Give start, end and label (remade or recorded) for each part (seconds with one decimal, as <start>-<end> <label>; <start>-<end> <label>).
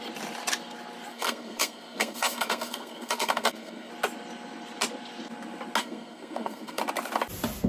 0.0-1.1 recorded; 1.1-3.9 remade; 3.9-5.8 recorded; 5.8-6.8 remade; 6.8-7.7 recorded